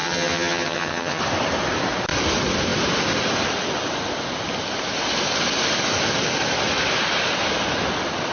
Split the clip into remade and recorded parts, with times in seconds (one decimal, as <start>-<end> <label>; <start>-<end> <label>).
0.0-1.2 remade; 1.2-8.3 recorded